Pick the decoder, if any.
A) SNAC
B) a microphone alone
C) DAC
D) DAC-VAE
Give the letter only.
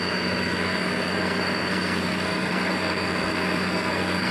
A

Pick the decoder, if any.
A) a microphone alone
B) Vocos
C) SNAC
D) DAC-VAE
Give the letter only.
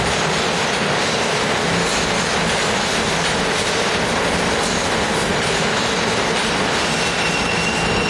A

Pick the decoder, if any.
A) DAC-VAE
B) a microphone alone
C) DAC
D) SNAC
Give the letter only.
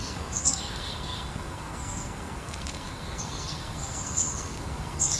D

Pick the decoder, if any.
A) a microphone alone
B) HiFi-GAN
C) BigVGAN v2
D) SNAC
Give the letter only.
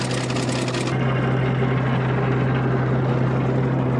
A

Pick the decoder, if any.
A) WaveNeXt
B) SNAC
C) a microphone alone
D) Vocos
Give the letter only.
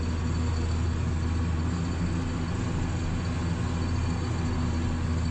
C